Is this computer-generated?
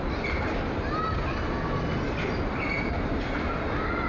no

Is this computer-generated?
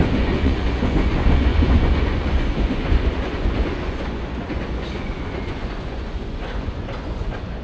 yes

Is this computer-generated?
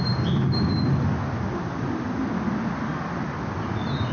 no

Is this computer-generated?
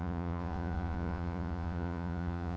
yes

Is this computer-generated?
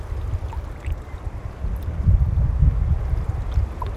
no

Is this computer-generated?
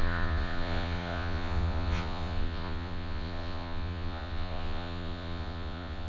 yes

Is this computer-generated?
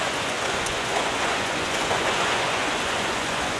yes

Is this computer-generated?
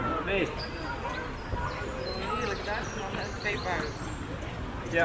no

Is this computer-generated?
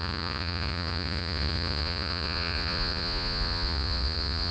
yes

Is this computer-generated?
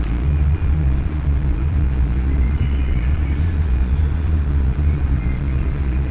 yes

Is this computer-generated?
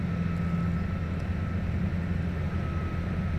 no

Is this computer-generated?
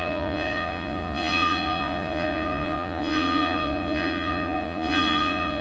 yes